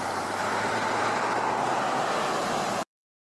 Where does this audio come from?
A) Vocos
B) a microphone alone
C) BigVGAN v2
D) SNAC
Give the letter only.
C